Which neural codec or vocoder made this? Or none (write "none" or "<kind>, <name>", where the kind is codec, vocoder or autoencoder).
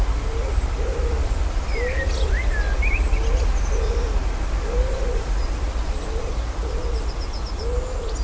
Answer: none